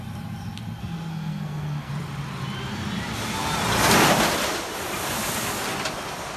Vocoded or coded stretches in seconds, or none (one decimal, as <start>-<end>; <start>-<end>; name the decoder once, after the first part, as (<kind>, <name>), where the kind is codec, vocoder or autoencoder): 1.1-1.9 (codec, SNAC)